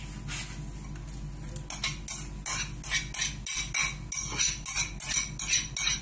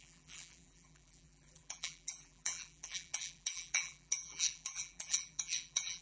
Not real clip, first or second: second